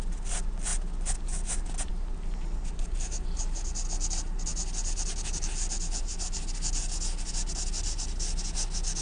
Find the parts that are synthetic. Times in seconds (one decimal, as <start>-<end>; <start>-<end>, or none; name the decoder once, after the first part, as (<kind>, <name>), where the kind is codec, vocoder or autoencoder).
none